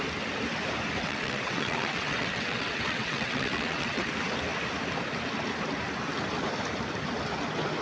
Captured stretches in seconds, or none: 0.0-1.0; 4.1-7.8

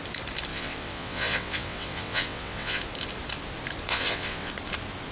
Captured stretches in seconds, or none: 0.0-0.5; 2.8-3.9; 4.5-5.1